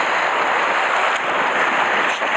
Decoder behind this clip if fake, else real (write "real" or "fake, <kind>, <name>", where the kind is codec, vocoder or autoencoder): real